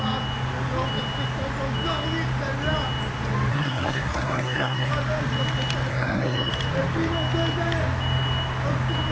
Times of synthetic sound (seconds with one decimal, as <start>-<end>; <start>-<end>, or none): 3.5-4.9; 5.9-6.5